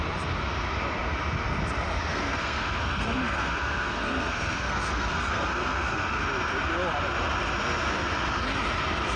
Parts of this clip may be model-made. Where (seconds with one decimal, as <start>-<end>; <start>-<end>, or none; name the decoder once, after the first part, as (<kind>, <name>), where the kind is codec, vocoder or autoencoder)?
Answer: 2.1-6.3 (codec, SNAC)